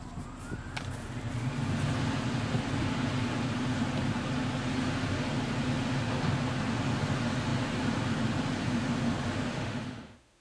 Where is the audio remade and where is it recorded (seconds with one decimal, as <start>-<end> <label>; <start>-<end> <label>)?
0.0-9.5 recorded; 9.5-10.4 remade